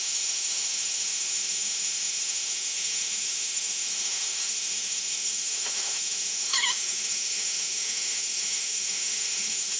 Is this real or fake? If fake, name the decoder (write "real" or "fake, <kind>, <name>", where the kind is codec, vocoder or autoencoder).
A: fake, autoencoder, DAC-VAE